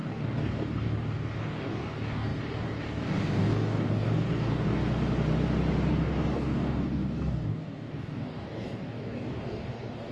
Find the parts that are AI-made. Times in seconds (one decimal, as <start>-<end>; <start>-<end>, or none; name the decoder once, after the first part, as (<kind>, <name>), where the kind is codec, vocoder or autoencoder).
0.0-4.8 (codec, DAC); 5.9-10.1